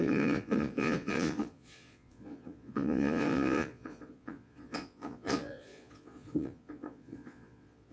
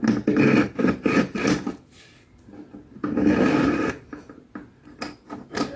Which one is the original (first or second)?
second